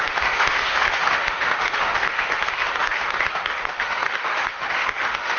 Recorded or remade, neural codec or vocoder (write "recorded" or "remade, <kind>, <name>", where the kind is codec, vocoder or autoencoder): remade, autoencoder, DAC-VAE